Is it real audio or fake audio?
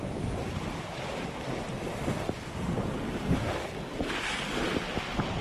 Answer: real